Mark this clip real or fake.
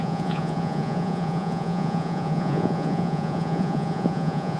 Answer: fake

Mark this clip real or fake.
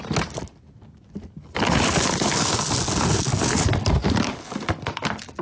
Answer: real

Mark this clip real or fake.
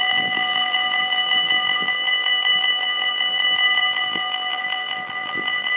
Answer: fake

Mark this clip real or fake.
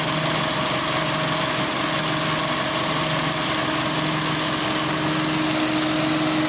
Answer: real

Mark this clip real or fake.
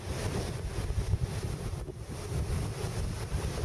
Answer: real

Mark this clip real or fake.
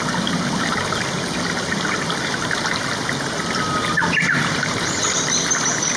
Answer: real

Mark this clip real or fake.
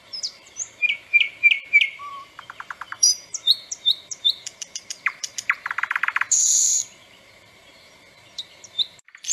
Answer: fake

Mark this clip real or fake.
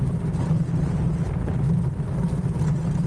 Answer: real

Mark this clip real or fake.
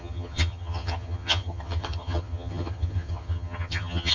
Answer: fake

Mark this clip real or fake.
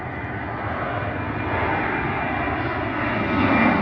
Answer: real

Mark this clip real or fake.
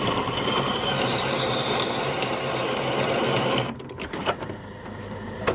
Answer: fake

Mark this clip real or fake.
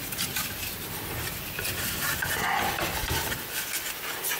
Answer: real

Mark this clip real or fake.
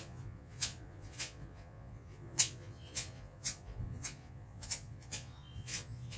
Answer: fake